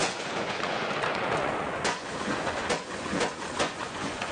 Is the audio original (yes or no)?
no